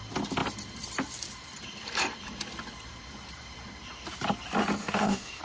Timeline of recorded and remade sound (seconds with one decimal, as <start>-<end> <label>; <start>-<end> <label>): 0.0-4.8 recorded; 4.8-5.4 remade

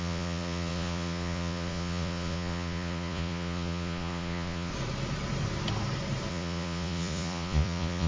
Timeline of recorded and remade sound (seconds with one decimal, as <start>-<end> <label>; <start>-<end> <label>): 0.0-4.7 remade; 4.7-6.3 recorded; 6.3-8.1 remade

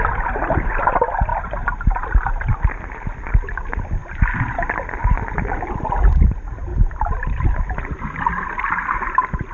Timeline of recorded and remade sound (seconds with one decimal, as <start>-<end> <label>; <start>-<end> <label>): 0.0-9.5 recorded